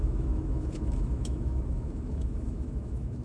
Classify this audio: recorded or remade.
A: remade